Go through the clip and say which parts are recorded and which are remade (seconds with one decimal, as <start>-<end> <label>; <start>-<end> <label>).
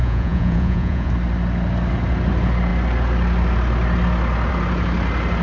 0.0-1.1 remade; 1.1-5.4 recorded